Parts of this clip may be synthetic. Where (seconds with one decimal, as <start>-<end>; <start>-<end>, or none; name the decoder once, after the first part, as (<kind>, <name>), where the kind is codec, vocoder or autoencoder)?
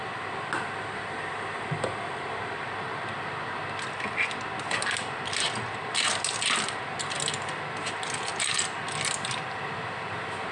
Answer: none